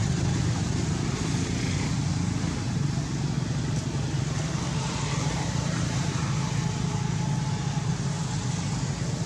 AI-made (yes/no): no